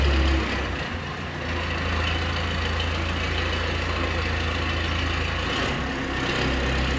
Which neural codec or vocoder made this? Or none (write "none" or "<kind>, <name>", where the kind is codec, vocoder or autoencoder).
none